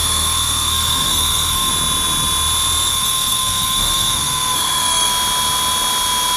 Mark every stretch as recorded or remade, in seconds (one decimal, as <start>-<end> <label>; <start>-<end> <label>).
0.0-1.7 remade; 1.7-2.9 recorded; 2.9-5.1 remade; 5.1-6.4 recorded